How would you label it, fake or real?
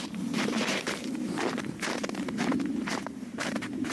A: fake